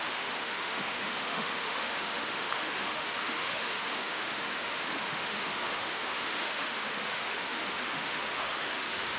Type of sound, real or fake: fake